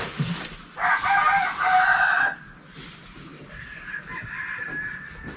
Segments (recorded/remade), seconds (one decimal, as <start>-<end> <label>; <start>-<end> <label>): 0.0-5.4 recorded